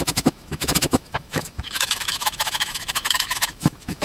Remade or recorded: remade